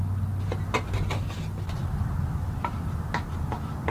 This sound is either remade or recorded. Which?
recorded